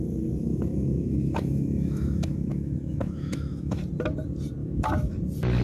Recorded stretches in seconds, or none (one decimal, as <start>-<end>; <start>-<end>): 0.0-0.4; 3.8-4.6; 5.1-5.6